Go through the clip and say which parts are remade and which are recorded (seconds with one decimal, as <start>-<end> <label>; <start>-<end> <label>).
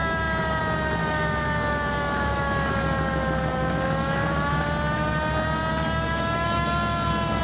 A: 0.0-0.6 remade; 0.6-1.0 recorded; 1.0-2.7 remade; 2.7-3.5 recorded; 3.5-4.5 remade; 4.5-5.7 recorded; 5.7-7.4 remade